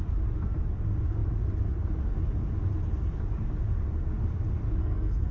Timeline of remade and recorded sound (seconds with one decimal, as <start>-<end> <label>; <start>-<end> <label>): 0.0-4.8 recorded; 4.8-5.3 remade